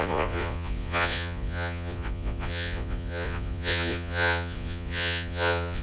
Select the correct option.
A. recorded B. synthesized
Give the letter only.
B